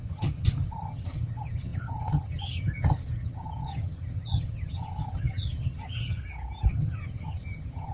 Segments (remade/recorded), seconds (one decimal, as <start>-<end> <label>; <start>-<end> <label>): 0.0-6.2 remade; 6.2-6.7 recorded; 6.7-7.9 remade